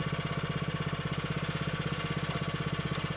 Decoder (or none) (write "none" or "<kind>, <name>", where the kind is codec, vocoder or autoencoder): none